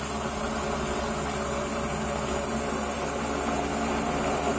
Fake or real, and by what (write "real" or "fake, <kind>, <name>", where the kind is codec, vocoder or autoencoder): real